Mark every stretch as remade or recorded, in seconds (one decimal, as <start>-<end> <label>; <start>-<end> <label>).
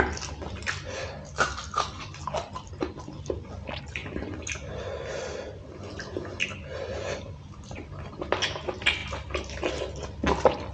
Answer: 0.0-10.7 recorded